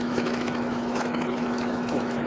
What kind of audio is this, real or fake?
fake